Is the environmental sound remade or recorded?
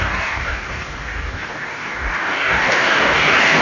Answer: remade